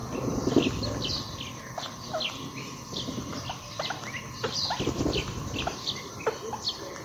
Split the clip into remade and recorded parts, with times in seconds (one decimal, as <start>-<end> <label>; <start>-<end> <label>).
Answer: 0.0-3.3 recorded; 3.3-6.2 remade; 6.2-7.0 recorded